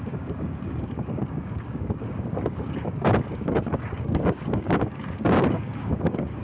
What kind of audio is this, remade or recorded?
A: remade